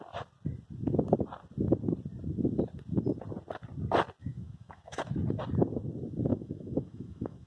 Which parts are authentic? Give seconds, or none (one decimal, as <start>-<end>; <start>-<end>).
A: 0.0-4.2; 5.0-6.3